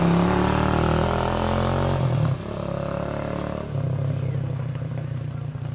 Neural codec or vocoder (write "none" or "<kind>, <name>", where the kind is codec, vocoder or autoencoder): none